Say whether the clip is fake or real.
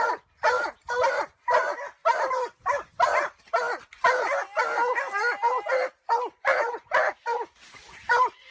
real